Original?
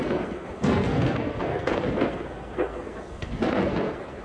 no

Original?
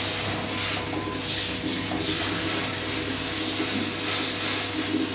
yes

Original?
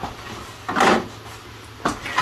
yes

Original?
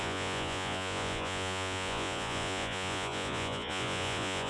no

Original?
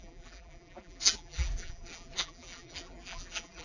no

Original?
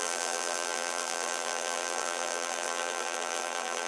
no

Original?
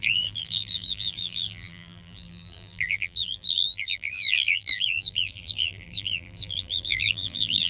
no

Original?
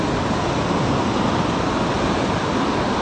yes